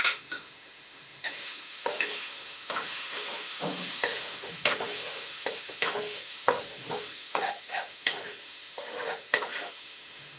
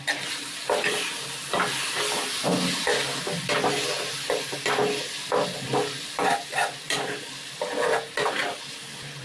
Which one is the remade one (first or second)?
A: first